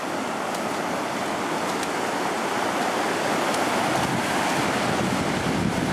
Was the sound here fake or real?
real